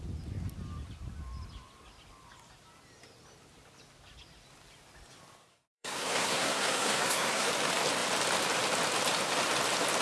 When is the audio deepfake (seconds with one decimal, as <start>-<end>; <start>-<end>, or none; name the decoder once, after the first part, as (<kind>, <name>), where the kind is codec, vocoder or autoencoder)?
5.5-7.5 (codec, SNAC)